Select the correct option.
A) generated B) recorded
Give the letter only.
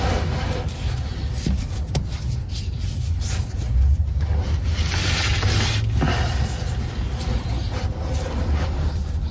B